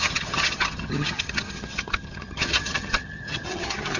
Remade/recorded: remade